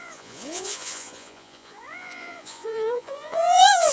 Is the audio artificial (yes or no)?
yes